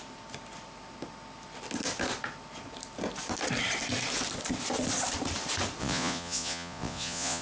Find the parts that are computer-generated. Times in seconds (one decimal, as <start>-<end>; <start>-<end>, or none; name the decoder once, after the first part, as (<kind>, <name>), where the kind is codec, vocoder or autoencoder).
5.8-7.4 (vocoder, Vocos)

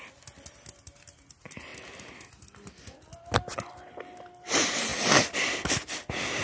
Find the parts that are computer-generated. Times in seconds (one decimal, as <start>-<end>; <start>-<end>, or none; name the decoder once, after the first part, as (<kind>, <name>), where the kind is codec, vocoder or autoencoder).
none

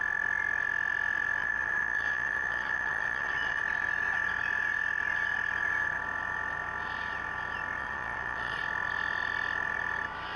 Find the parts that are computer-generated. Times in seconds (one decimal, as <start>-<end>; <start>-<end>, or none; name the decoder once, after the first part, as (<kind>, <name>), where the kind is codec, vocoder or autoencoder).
1.4-3.6 (vocoder, Vocos); 7.8-8.6

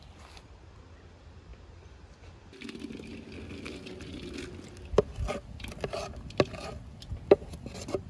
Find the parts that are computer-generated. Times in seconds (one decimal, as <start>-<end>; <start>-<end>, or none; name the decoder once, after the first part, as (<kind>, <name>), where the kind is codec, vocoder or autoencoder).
none

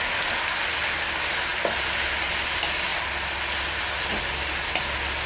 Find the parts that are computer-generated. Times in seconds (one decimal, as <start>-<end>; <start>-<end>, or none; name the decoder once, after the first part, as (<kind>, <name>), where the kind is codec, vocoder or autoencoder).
none

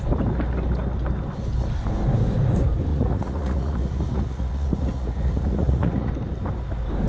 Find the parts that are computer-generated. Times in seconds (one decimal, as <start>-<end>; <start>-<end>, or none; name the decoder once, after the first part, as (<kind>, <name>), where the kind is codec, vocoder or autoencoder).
2.9-6.1 (vocoder, Vocos)

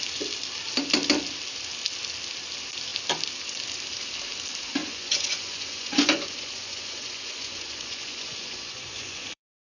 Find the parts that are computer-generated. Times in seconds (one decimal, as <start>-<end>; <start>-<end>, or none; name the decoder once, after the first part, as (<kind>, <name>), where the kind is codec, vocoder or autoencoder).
4.8-9.8 (vocoder, Vocos)

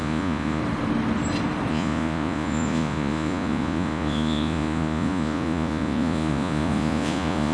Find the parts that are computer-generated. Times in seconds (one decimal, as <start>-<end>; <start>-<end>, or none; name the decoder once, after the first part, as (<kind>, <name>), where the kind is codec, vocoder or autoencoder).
0.0-0.6 (vocoder, Vocos); 1.7-7.5